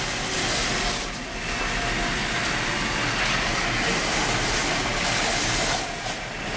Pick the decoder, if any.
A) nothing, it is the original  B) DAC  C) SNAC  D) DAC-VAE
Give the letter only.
A